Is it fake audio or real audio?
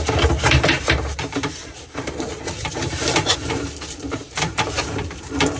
fake